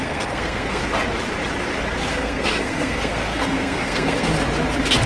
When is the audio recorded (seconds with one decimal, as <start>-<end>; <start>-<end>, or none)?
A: 0.8-2.1; 4.3-5.1